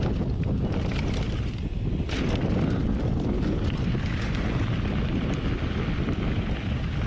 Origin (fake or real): real